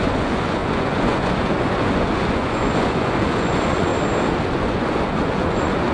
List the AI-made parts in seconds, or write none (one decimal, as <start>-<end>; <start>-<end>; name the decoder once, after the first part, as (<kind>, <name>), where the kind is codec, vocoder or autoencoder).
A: 0.0-3.9 (vocoder, Vocos); 4.5-5.9